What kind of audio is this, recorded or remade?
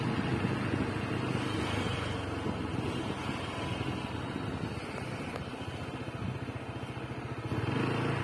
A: recorded